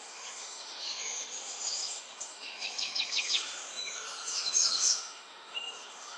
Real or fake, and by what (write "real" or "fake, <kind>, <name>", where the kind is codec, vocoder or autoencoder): fake, autoencoder, DAC-VAE